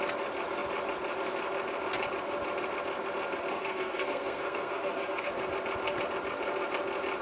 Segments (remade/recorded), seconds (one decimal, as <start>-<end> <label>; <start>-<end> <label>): 0.0-3.5 recorded; 3.5-5.3 remade; 5.3-7.2 recorded